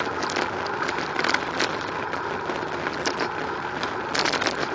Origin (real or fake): real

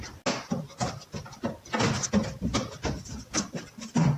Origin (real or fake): real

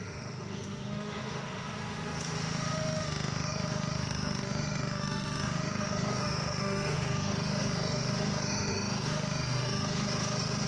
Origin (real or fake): fake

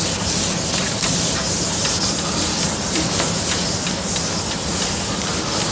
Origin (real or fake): real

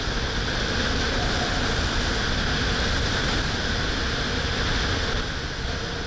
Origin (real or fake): real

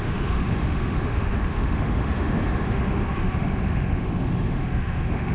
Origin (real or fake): fake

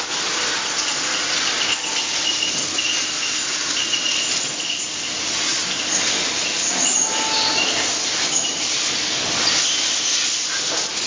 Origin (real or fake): real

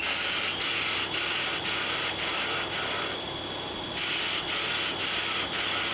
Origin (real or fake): real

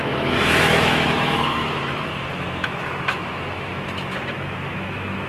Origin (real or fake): fake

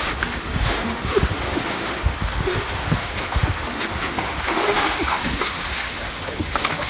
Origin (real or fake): fake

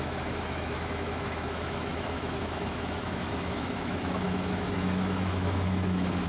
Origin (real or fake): fake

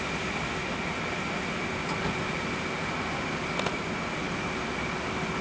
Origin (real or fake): real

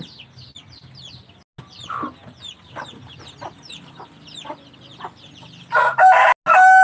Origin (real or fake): real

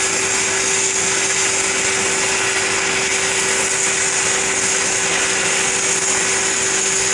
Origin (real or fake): real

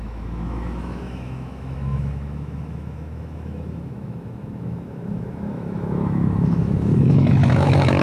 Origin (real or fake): fake